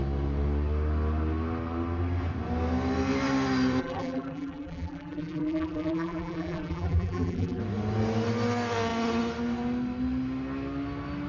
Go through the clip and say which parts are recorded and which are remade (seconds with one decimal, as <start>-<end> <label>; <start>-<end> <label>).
0.0-3.8 recorded; 3.8-7.6 remade; 7.6-11.3 recorded

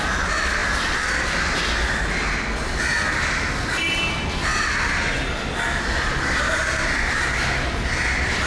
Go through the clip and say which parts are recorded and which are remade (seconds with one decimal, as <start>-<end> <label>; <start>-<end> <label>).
0.0-0.6 remade; 0.6-3.5 recorded; 3.5-8.5 remade

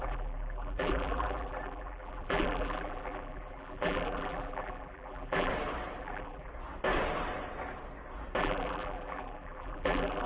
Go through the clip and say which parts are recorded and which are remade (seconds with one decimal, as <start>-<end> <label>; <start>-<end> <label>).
0.0-5.5 remade; 5.5-6.0 recorded; 6.0-6.5 remade; 6.5-8.4 recorded; 8.4-10.3 remade